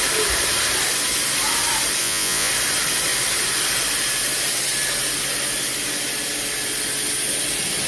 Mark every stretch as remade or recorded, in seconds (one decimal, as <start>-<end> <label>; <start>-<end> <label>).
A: 0.0-2.0 recorded; 2.0-2.5 remade; 2.5-7.9 recorded